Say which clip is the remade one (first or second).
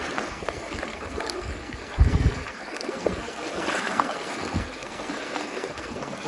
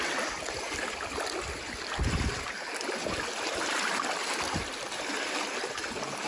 first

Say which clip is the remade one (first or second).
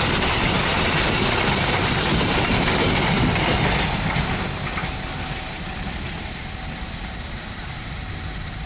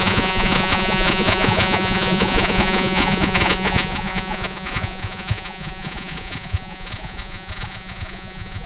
second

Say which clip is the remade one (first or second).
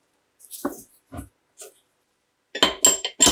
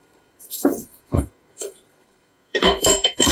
second